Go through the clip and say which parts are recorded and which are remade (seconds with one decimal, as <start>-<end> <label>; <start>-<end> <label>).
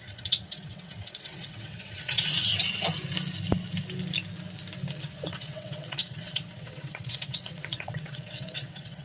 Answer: 0.0-2.5 remade; 2.5-5.0 recorded; 5.0-9.0 remade